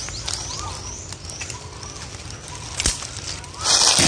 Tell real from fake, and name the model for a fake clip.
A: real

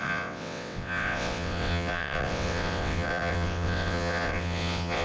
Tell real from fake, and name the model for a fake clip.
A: fake, vocoder, WaveNeXt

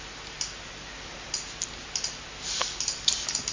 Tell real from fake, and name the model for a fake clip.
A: real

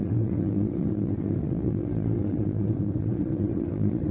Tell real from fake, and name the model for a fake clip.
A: fake, vocoder, WaveNeXt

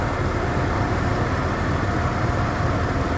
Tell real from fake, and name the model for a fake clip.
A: real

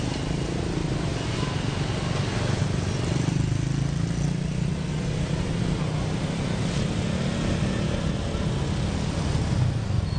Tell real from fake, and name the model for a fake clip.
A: real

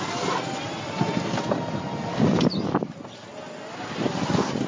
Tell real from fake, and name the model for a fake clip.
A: real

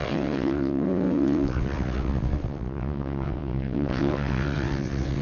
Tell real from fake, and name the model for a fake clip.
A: fake, vocoder, WaveNeXt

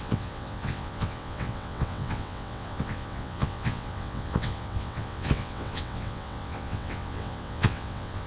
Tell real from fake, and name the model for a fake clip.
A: fake, vocoder, WaveNeXt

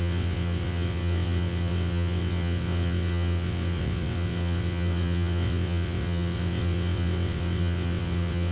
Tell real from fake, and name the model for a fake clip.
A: fake, vocoder, WaveNeXt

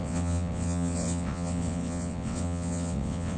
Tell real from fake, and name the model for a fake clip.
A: fake, vocoder, WaveNeXt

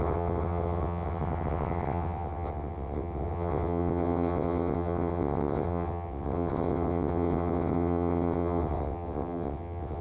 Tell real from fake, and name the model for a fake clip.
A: fake, vocoder, WaveNeXt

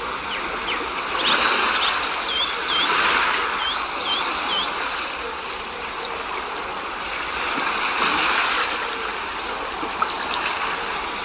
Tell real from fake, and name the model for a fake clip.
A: real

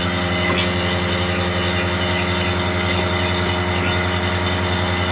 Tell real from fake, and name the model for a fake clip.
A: real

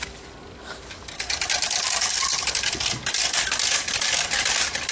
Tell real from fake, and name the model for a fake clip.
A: real